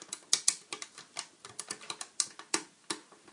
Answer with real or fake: real